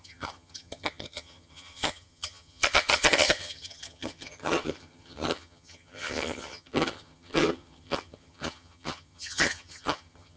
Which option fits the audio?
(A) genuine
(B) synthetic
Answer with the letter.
B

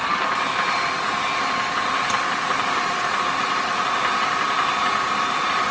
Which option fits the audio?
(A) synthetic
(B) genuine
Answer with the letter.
B